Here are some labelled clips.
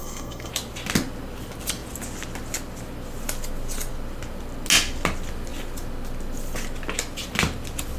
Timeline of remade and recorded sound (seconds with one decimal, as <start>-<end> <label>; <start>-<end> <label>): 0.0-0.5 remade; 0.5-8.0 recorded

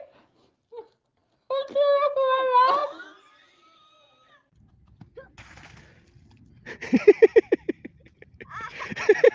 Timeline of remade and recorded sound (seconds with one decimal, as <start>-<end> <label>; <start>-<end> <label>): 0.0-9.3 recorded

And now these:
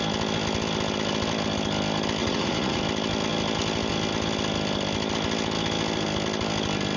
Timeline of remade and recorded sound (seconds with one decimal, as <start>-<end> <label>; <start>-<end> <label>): 0.0-2.2 recorded; 2.2-2.8 remade; 2.8-7.0 recorded